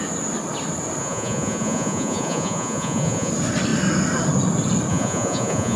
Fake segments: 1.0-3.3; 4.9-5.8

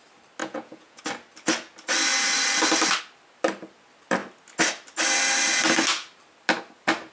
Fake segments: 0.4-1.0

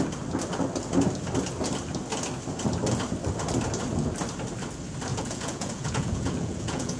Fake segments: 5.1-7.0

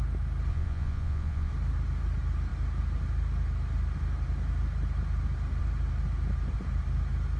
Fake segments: 0.5-1.5

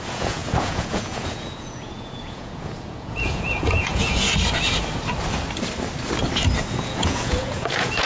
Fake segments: 0.0-4.3; 6.7-8.1

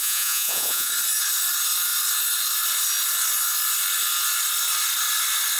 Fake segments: 0.0-0.9

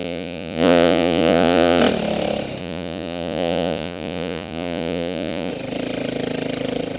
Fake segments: 0.0-1.8; 2.6-5.5

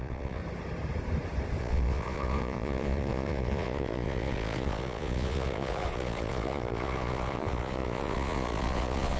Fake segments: 0.0-0.4; 1.6-9.2